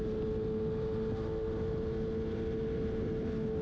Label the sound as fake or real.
real